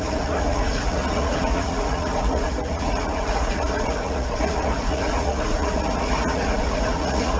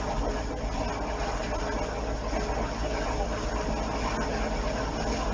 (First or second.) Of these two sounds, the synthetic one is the first